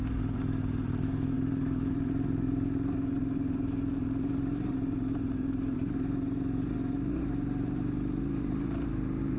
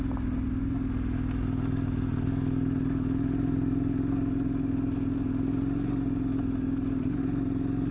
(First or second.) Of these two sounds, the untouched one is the second